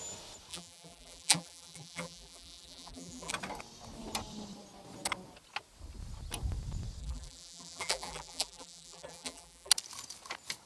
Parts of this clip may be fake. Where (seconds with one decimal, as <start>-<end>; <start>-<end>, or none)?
0.5-3.3; 7.0-9.7